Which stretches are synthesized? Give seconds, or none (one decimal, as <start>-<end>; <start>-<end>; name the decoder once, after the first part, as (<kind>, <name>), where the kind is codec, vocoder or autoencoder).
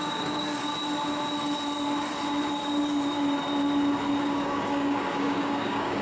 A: 0.0-0.7 (codec, DAC); 4.3-6.0